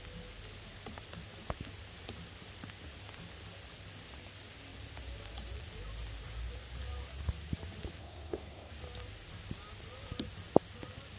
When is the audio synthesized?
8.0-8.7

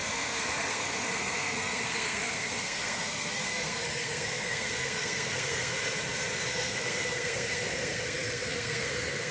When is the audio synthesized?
0.0-5.7; 6.5-9.3

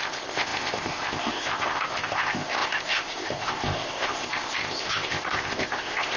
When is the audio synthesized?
0.0-6.2

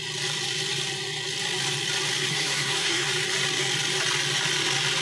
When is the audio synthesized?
2.3-3.1